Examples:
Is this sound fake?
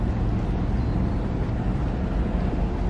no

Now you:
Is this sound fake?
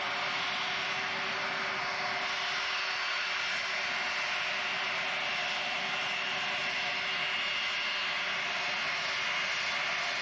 no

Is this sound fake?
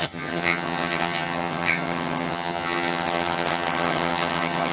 yes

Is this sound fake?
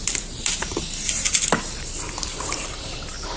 yes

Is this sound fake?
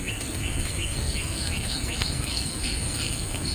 yes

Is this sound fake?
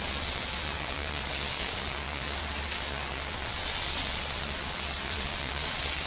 yes